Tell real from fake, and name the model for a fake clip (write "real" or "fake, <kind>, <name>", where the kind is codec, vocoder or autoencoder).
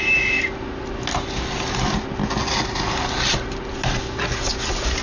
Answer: real